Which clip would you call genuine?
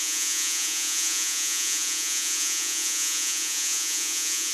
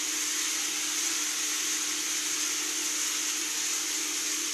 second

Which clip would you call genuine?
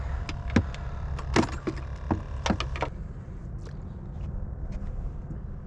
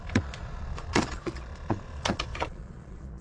first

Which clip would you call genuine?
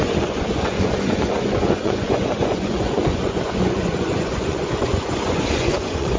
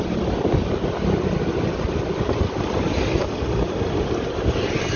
second